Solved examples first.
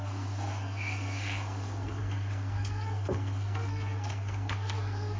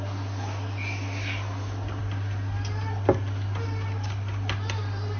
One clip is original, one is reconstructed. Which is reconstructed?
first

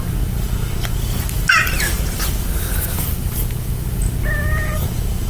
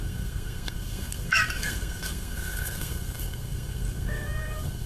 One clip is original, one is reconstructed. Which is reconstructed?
second